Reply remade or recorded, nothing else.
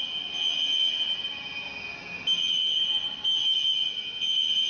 recorded